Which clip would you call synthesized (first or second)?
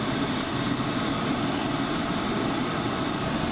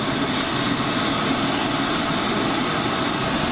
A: first